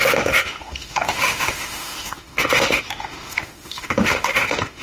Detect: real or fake fake